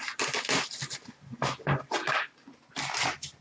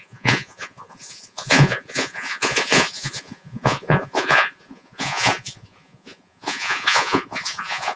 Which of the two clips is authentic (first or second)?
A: first